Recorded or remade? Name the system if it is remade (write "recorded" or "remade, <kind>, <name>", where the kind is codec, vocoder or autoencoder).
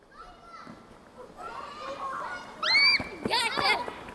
recorded